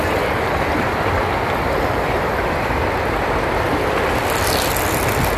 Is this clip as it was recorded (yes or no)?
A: yes